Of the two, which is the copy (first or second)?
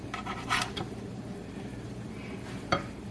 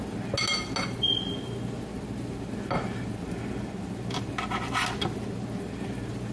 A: first